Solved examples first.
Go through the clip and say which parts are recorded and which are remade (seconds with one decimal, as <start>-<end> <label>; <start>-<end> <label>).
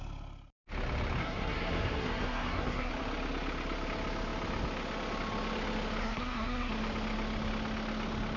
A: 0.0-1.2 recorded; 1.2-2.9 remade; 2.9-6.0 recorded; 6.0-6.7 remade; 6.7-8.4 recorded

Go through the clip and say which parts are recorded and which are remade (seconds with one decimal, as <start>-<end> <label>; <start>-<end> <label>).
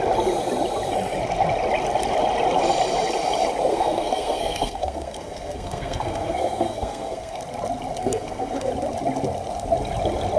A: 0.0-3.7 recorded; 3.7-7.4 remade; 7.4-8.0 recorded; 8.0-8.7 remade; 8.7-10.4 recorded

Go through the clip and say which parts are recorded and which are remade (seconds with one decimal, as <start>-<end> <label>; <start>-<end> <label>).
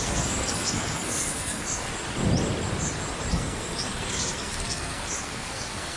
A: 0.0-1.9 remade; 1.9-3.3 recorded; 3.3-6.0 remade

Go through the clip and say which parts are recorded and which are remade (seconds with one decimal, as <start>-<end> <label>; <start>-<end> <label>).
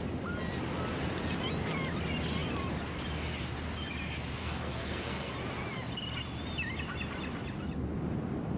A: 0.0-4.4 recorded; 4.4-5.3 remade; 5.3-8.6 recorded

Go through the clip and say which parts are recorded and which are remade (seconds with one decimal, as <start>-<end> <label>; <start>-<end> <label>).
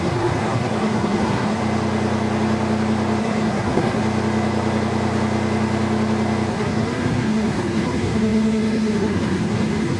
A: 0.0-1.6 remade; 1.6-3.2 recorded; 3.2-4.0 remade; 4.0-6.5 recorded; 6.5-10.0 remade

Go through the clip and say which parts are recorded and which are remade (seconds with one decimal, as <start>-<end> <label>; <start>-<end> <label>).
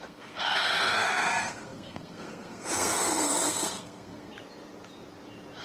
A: 0.0-4.3 remade; 4.3-5.6 recorded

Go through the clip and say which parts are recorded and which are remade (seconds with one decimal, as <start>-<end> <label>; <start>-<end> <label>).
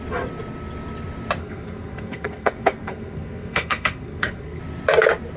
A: 0.0-1.4 recorded; 1.4-4.6 remade; 4.6-5.4 recorded